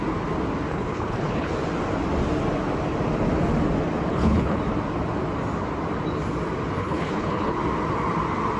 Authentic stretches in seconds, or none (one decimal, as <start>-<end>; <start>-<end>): 0.0-0.7; 1.5-4.1; 4.6-6.8; 7.6-8.6